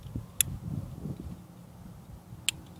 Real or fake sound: real